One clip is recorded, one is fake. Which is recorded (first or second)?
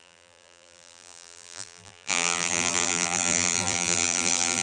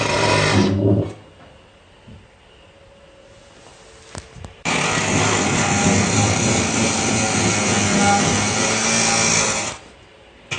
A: second